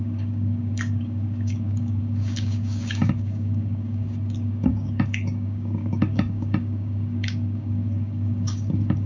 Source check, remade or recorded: remade